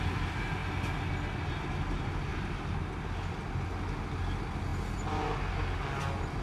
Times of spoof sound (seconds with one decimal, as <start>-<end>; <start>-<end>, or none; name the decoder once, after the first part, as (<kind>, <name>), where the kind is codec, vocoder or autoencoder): none